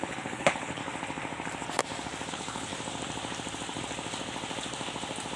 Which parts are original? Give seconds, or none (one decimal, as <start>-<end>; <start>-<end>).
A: 0.8-2.3; 2.7-5.4